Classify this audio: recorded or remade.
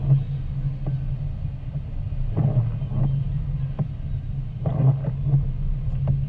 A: recorded